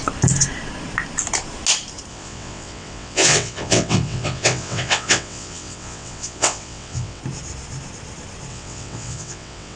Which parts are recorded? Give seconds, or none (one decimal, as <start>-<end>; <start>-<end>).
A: 0.0-2.1; 7.2-8.5